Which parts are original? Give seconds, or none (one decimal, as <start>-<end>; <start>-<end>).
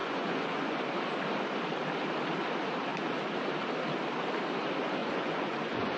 0.8-5.0